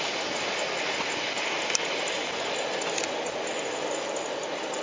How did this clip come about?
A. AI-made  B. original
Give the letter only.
B